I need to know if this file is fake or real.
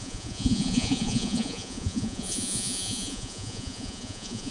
fake